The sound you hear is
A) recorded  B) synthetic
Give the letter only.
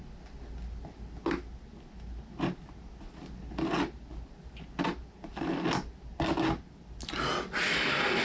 A